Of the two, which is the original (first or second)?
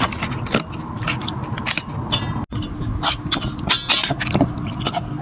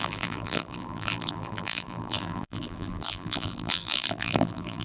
first